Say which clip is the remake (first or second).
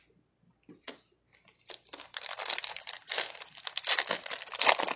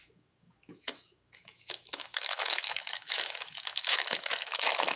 second